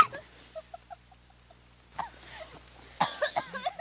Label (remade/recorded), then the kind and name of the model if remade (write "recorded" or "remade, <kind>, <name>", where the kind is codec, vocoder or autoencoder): recorded